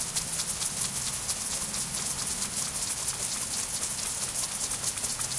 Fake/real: real